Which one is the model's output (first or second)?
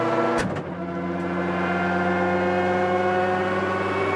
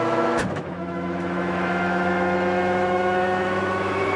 second